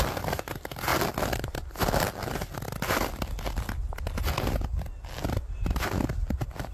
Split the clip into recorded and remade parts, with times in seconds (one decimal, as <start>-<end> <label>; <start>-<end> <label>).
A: 0.0-6.7 recorded